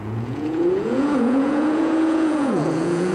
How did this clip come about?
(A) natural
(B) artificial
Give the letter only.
B